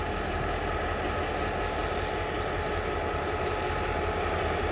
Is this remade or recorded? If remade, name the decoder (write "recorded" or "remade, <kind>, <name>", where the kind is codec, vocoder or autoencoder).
recorded